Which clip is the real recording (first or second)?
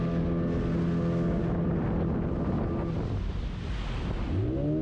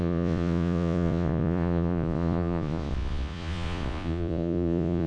first